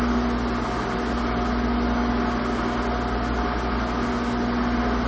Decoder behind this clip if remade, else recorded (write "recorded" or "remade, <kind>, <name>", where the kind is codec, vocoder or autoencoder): recorded